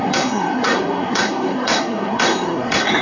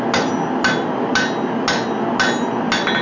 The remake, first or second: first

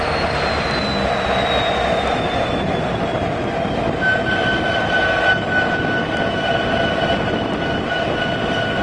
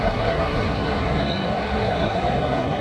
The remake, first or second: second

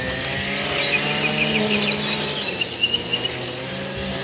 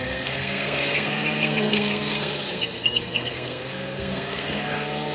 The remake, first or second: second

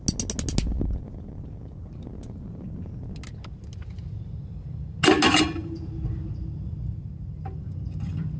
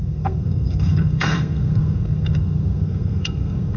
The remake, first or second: second